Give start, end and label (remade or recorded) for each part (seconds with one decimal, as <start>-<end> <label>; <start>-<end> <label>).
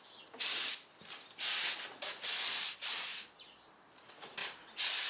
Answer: 0.0-5.1 recorded